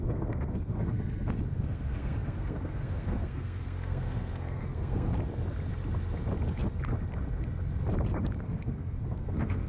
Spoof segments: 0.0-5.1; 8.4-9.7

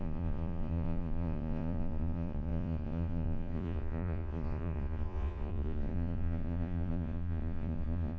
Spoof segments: 0.0-8.2

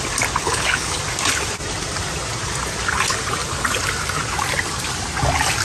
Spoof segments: 0.4-1.0

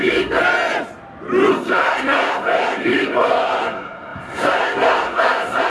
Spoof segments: 0.0-0.4; 1.5-5.7

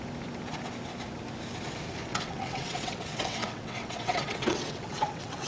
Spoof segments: 2.1-5.5